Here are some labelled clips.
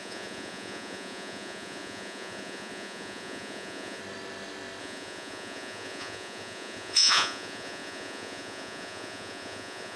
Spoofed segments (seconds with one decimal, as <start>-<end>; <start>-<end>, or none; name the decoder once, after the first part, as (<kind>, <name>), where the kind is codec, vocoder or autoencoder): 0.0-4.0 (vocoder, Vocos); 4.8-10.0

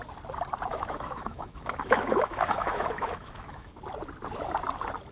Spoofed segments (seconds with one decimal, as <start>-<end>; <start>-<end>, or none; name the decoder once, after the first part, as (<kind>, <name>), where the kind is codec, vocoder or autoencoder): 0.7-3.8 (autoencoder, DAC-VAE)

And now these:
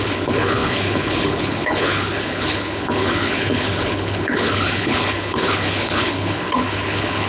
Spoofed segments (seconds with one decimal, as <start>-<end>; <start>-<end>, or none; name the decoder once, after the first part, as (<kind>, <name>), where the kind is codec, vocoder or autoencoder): 0.0-7.3 (codec, HILCodec)